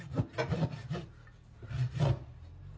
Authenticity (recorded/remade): recorded